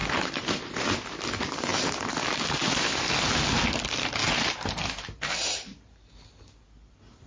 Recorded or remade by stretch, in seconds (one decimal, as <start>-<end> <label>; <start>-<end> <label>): 0.0-1.2 remade; 1.2-4.2 recorded; 4.2-6.3 remade; 6.3-7.3 recorded